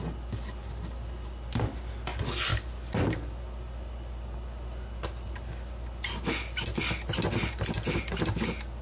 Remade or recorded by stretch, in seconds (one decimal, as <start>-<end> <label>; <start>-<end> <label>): 0.0-8.8 recorded